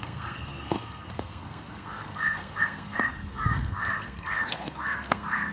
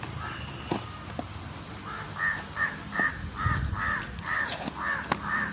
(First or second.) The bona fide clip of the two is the second